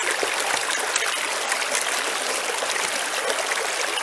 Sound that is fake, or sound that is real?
real